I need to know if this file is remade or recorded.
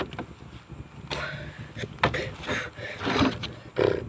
recorded